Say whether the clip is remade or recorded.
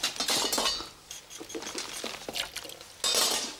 recorded